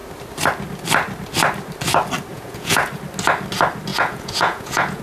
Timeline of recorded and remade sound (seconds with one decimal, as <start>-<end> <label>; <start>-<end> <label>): 0.0-2.3 recorded; 2.3-2.9 remade; 2.9-3.9 recorded; 3.9-5.0 remade